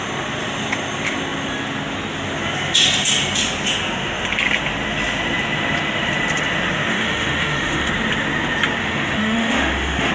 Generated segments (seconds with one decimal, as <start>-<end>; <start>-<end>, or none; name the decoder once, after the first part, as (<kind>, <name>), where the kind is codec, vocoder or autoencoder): 6.9-7.9 (autoencoder, DAC-VAE); 8.8-10.1